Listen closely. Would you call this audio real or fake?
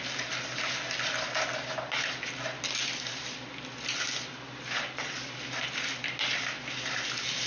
real